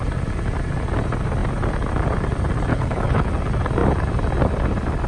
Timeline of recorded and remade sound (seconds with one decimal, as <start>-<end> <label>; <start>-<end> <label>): 0.0-2.7 recorded; 2.7-3.3 remade; 3.3-5.1 recorded